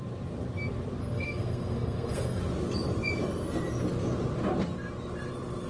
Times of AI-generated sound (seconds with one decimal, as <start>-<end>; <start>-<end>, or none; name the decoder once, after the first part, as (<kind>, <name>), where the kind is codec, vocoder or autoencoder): 1.0-2.4 (codec, SNAC)